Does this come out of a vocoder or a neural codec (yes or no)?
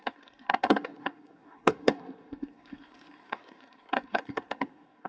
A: yes